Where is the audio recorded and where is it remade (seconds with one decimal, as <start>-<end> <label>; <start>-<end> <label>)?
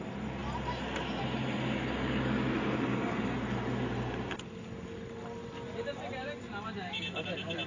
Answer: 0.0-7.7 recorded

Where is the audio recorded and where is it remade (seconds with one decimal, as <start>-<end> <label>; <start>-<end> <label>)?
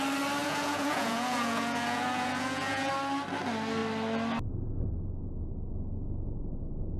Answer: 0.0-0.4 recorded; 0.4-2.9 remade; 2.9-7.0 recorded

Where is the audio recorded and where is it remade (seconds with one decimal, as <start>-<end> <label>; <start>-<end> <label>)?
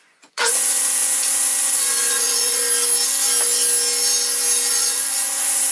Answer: 0.0-2.6 remade; 2.6-4.7 recorded; 4.7-5.7 remade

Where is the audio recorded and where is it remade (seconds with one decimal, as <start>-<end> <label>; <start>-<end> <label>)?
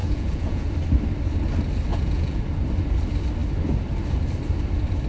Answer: 0.0-0.7 remade; 0.7-1.9 recorded; 1.9-2.4 remade; 2.4-5.1 recorded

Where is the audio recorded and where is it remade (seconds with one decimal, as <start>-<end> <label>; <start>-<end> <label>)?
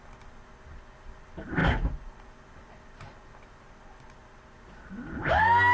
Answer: 0.0-5.7 recorded